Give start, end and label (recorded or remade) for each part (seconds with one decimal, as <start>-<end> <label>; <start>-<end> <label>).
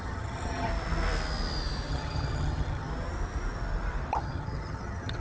0.0-0.7 remade; 0.7-1.9 recorded; 1.9-2.9 remade; 2.9-4.2 recorded; 4.2-5.2 remade